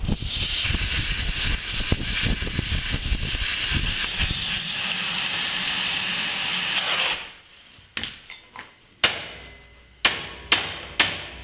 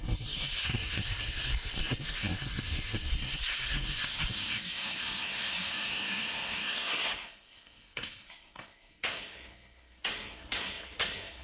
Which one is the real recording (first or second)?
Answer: first